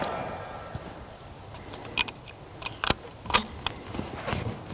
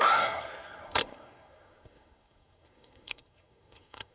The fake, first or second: second